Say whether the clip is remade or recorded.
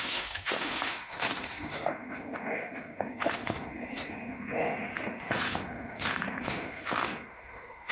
remade